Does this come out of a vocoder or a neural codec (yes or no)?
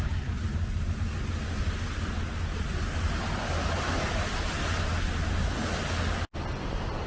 no